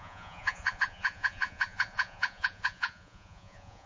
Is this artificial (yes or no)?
yes